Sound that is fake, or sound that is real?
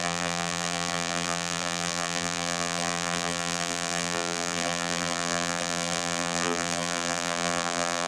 fake